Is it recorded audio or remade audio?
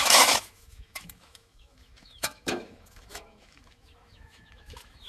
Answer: remade